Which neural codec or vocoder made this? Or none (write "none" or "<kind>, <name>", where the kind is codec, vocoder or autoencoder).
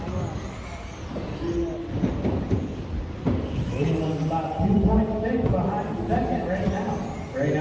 none